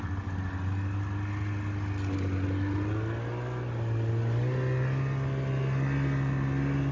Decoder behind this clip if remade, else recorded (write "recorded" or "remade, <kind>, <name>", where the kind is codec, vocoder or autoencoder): recorded